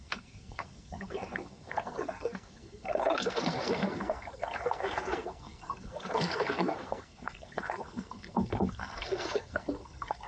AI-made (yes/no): yes